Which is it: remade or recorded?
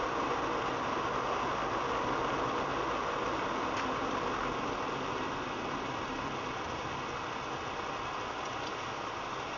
recorded